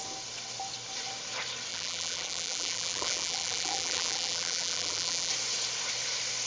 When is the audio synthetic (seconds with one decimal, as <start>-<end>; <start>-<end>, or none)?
1.7-5.3